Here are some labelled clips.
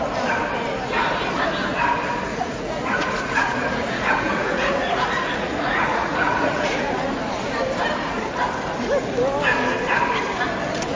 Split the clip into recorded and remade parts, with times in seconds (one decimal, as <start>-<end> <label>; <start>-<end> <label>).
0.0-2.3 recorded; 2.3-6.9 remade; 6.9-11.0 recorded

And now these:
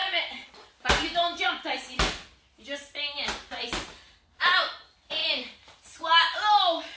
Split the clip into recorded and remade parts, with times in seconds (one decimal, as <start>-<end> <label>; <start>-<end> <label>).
0.0-0.5 remade; 0.5-7.0 recorded

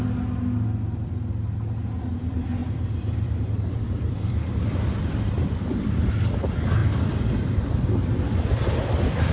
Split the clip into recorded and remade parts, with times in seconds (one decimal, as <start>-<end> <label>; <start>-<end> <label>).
0.0-2.6 recorded; 2.6-4.7 remade; 4.7-6.8 recorded; 6.8-7.8 remade; 7.8-9.3 recorded

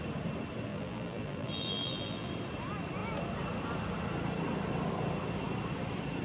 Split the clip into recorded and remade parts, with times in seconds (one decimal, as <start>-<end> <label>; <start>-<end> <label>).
0.0-0.7 recorded; 0.7-2.3 remade; 2.3-6.2 recorded

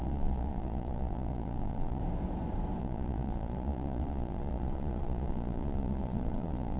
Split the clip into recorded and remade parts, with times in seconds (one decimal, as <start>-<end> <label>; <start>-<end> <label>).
0.0-2.0 remade; 2.0-2.8 recorded; 2.8-6.8 remade

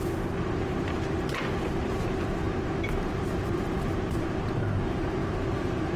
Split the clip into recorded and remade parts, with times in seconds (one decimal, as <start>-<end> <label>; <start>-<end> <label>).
0.0-6.0 remade

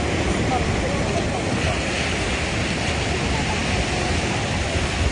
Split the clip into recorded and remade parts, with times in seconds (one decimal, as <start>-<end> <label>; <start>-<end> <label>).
0.0-5.1 recorded